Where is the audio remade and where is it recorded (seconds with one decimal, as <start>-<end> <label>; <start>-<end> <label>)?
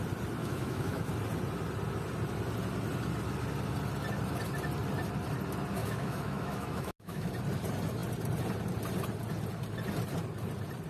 0.0-0.4 recorded; 0.4-1.1 remade; 1.1-5.8 recorded; 5.8-7.3 remade; 7.3-10.9 recorded